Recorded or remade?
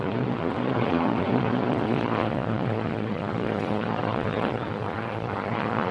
remade